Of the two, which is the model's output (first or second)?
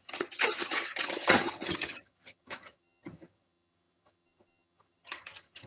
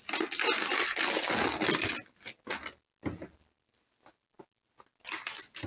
first